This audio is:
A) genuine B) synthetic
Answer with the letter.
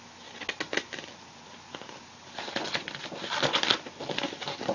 A